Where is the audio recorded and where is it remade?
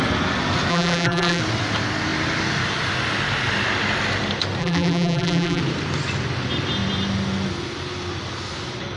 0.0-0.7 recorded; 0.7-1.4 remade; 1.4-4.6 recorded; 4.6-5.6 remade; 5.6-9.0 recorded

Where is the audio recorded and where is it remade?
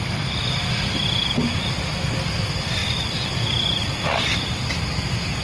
0.0-5.4 recorded